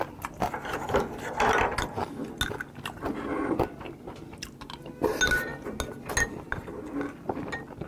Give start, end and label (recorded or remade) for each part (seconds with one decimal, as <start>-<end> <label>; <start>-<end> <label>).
0.0-7.9 recorded